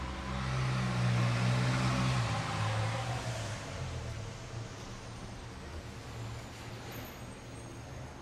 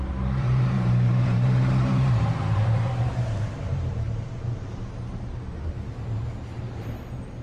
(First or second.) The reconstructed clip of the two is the second